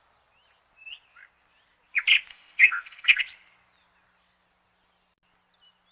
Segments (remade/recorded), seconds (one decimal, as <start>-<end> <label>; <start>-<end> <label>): 0.0-2.3 recorded; 2.3-3.2 remade; 3.2-5.9 recorded